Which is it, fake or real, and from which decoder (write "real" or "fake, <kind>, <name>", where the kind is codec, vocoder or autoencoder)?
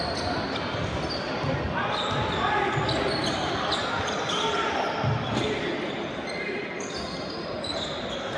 real